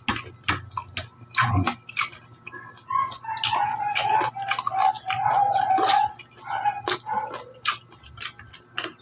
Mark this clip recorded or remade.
recorded